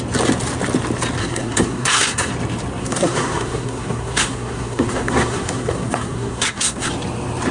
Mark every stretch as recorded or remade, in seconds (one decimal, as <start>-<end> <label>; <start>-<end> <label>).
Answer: 0.0-1.2 recorded; 1.2-2.3 remade; 2.3-2.8 recorded; 2.8-6.9 remade; 6.9-7.5 recorded